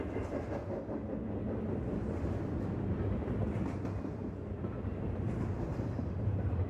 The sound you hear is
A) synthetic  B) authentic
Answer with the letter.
B